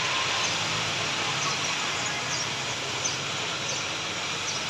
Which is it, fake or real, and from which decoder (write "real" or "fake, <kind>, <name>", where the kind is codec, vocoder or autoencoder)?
real